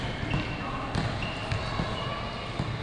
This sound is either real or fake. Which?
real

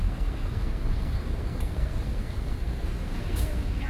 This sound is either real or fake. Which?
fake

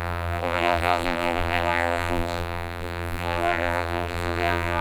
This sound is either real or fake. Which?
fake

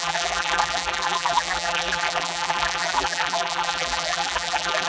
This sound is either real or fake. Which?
fake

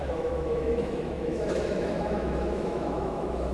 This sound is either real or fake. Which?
fake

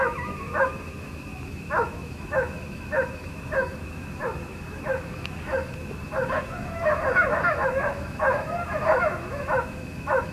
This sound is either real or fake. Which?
fake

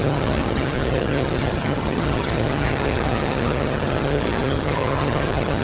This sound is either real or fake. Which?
fake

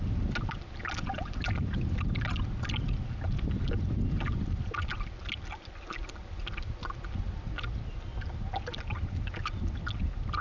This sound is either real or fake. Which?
real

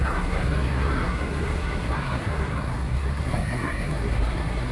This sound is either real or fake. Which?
fake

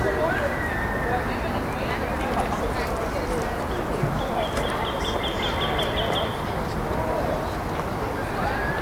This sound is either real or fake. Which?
real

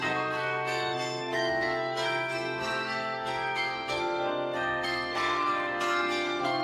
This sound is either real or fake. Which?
fake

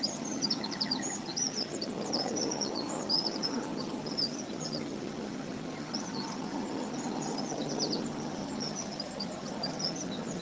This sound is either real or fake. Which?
fake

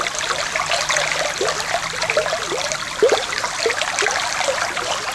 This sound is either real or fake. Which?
real